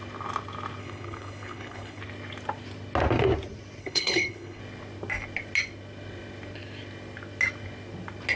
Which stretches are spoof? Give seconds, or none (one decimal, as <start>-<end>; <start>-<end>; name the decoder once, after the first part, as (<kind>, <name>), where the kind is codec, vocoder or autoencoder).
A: 0.8-2.0 (codec, HILCodec); 3.8-4.6